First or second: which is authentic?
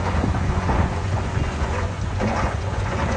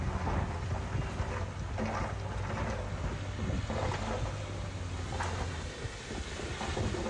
second